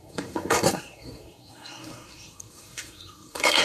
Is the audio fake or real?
fake